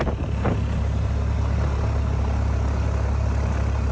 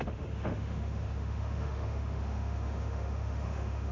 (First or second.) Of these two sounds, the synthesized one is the second